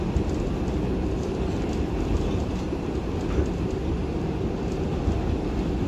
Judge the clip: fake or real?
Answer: real